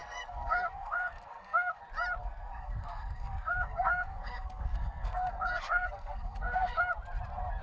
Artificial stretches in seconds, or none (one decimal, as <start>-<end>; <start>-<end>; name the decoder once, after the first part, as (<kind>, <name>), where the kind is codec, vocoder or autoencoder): 0.0-1.8 (codec, SNAC); 2.2-6.8